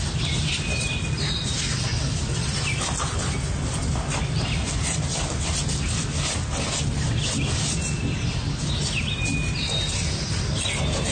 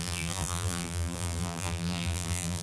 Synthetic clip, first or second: second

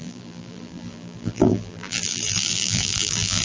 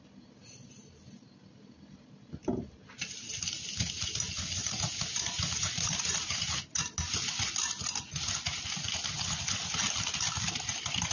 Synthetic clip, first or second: first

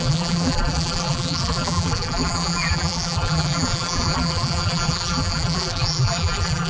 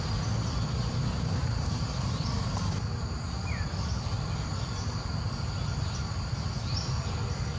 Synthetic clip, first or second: first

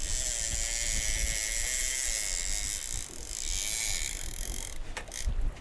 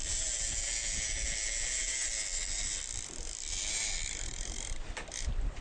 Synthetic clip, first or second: second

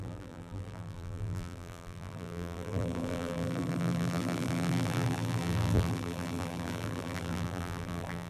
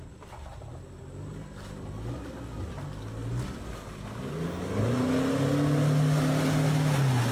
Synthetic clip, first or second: first